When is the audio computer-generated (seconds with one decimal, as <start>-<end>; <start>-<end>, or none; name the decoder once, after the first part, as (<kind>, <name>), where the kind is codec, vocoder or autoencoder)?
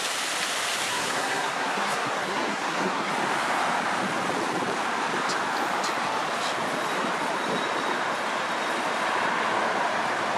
0.9-3.1 (codec, SNAC)